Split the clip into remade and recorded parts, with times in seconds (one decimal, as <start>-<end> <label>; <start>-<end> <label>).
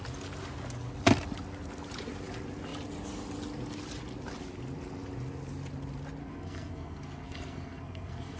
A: 0.0-6.2 recorded; 6.2-8.4 remade